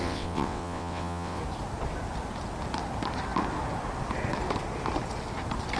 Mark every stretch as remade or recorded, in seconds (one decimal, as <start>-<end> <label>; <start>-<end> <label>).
0.0-1.4 remade; 1.4-5.8 recorded